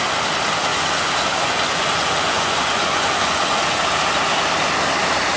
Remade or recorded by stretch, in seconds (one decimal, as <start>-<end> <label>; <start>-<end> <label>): 0.0-0.7 recorded; 0.7-3.8 remade; 3.8-5.4 recorded